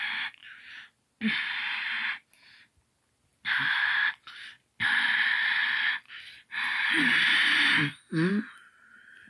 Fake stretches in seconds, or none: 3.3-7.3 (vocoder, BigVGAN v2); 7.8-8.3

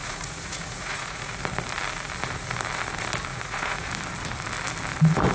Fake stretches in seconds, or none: 0.0-1.3 (vocoder, Vocos); 3.3-3.9

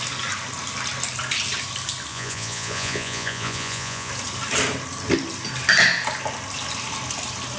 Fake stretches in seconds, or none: 2.1-4.1 (vocoder, Vocos)

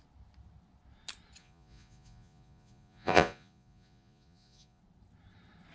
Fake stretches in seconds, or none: 1.4-4.8 (vocoder, Vocos)

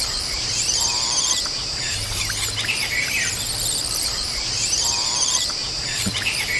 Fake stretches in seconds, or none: 0.0-6.6 (vocoder, BigVGAN v2)

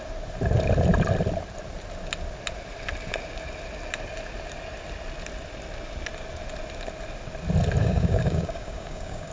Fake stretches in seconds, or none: 7.8-9.3 (codec, DAC)

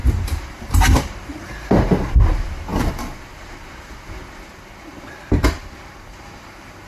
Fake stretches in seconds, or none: 0.0-2.7 (vocoder, BigVGAN v2); 6.5-6.9